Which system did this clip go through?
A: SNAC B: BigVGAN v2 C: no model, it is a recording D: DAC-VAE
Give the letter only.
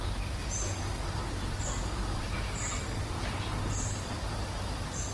C